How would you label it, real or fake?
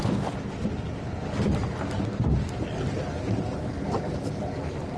real